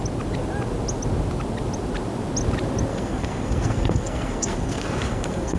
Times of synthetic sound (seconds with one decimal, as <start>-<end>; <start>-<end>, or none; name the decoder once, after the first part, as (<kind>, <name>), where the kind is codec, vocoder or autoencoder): 2.9-5.6 (codec, SNAC)

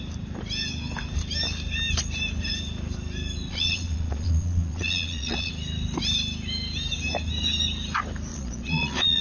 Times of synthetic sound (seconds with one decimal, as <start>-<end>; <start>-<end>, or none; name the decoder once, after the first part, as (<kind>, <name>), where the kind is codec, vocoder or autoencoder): 3.5-5.5 (vocoder, Vocos); 8.3-9.2